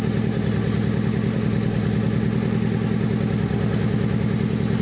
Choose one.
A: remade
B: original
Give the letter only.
B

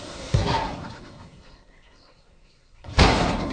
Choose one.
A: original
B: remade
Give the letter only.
B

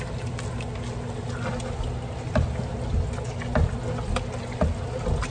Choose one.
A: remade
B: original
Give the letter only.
B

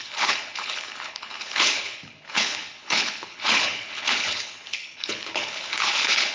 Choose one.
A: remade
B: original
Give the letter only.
A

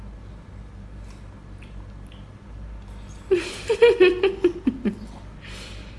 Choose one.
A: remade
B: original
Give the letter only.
B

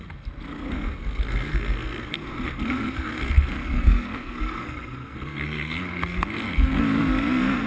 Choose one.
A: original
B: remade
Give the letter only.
B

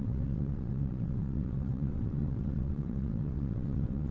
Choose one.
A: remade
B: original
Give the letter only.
A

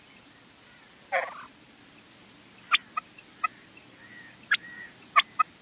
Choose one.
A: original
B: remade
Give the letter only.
A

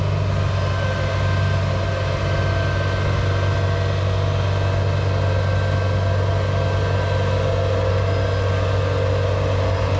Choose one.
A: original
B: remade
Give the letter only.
A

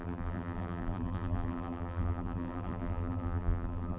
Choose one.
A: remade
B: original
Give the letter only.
A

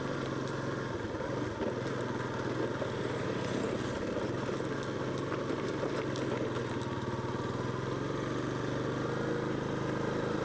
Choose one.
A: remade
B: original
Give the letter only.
B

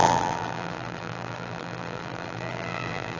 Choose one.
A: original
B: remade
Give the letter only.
B